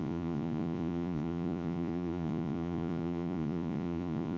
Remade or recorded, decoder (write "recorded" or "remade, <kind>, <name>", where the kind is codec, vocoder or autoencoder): remade, vocoder, Vocos